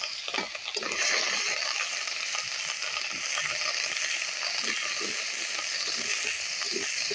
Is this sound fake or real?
real